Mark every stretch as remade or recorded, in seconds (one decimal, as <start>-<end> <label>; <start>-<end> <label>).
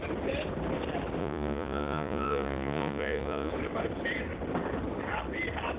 0.0-1.2 recorded; 1.2-3.5 remade; 3.5-5.8 recorded